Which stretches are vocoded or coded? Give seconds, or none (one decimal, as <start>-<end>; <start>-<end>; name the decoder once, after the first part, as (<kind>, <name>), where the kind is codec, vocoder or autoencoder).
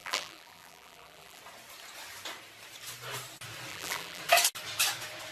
0.0-1.4 (vocoder, BigVGAN v2); 3.7-4.2